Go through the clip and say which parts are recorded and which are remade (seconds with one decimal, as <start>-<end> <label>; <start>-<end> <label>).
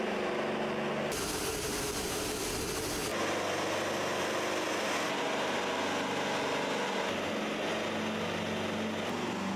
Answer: 0.0-9.6 recorded